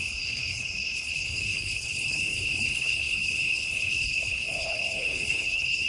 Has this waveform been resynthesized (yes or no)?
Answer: yes